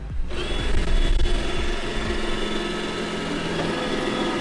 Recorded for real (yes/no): yes